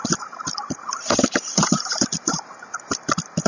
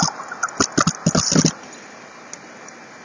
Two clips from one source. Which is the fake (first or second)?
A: first